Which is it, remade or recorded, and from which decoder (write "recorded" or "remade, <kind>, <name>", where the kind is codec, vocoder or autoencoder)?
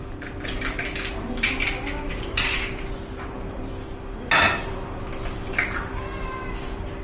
recorded